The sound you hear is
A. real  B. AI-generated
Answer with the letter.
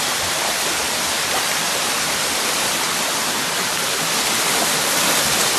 B